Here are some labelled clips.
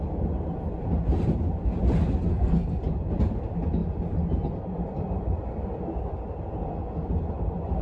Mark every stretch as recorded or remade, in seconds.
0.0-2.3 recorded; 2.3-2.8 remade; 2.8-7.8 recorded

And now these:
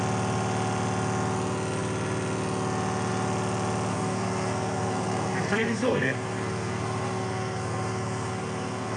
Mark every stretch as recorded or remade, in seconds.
0.0-3.9 recorded; 3.9-9.0 remade

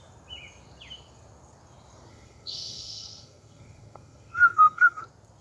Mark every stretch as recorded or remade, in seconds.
0.0-2.1 recorded; 2.1-5.0 remade; 5.0-5.4 recorded

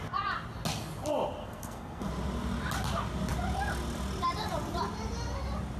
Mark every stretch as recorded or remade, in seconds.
0.0-1.4 recorded; 1.4-2.1 remade; 2.1-5.8 recorded

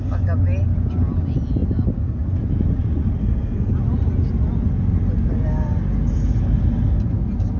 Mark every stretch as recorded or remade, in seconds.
0.0-3.2 recorded; 3.2-3.7 remade; 3.7-7.6 recorded

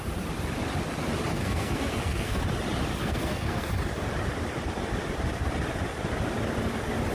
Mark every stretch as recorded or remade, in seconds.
0.0-1.3 recorded; 1.3-2.4 remade; 2.4-3.0 recorded; 3.0-3.7 remade; 3.7-7.1 recorded

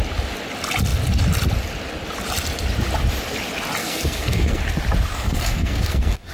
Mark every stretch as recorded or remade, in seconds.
0.0-3.8 recorded; 3.8-4.6 remade; 4.6-5.1 recorded; 5.1-6.3 remade